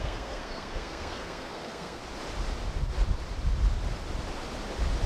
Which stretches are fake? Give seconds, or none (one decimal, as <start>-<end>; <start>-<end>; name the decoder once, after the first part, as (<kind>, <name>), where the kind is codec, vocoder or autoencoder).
0.0-2.0 (codec, SNAC)